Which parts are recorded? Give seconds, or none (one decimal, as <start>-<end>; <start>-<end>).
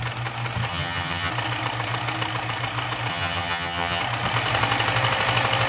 0.0-0.7; 1.3-3.1; 4.0-5.7